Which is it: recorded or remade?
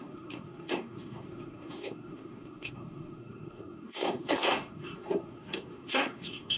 remade